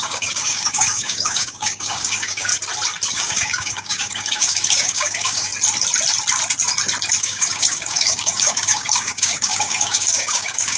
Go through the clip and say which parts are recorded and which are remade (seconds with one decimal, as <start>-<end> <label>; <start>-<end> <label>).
0.0-2.5 remade; 2.5-3.1 recorded; 3.1-5.5 remade; 5.5-7.2 recorded; 7.2-10.8 remade